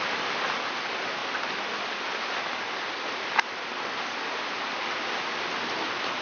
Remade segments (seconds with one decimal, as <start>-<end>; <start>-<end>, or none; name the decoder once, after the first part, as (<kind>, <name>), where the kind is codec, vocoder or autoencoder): none